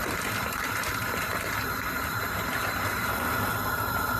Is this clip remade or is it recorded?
recorded